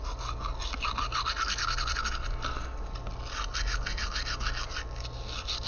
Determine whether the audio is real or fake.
real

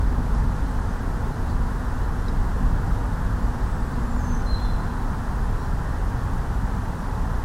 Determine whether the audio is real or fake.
real